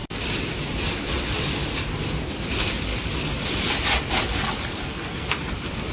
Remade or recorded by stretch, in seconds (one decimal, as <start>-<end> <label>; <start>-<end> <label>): 0.0-4.7 recorded; 4.7-5.5 remade; 5.5-5.9 recorded